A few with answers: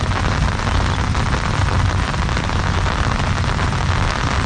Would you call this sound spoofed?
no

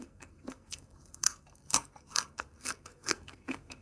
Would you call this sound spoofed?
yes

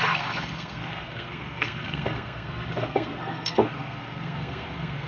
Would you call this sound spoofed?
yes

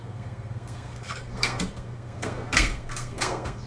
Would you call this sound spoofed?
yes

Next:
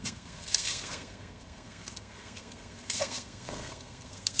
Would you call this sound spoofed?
yes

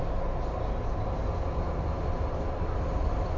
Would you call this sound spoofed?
no